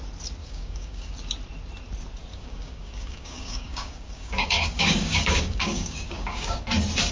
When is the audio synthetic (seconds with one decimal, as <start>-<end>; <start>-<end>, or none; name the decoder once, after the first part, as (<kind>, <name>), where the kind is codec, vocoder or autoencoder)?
0.4-1.1 (codec, DAC); 2.3-6.6